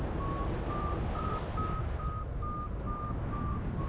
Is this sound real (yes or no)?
yes